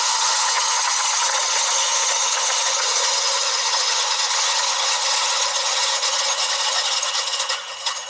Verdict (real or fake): fake